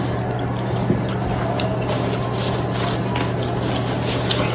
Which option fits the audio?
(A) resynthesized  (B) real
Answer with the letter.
B